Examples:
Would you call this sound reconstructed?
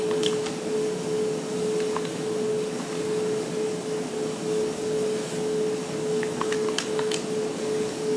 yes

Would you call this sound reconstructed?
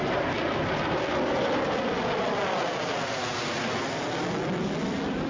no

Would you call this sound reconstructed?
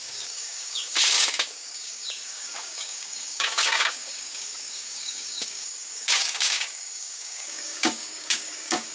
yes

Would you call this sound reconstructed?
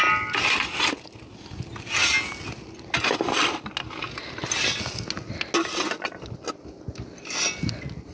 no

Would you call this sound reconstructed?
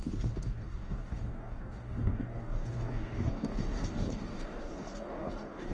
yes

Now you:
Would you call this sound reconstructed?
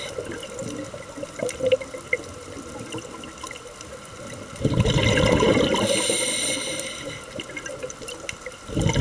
no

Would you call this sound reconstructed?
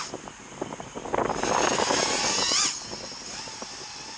no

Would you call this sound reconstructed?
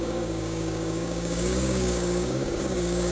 yes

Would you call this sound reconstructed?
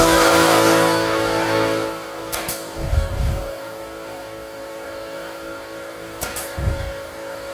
yes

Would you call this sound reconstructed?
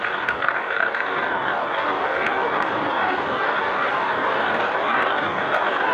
yes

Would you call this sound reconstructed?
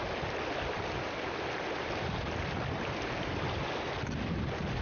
no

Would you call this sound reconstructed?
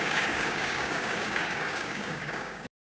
yes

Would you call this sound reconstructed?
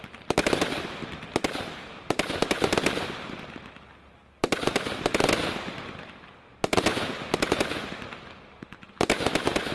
no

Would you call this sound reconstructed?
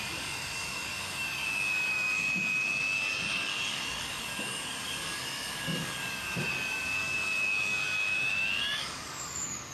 yes